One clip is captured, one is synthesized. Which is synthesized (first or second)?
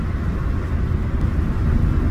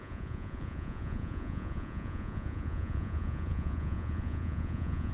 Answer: second